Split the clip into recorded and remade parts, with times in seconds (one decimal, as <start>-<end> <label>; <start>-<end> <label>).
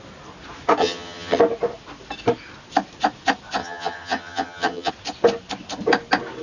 0.0-0.8 recorded; 0.8-1.4 remade; 1.4-3.6 recorded; 3.6-4.9 remade; 4.9-6.4 recorded